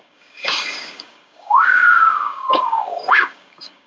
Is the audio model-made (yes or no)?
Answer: yes